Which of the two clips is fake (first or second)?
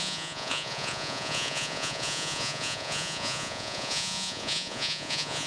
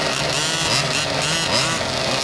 first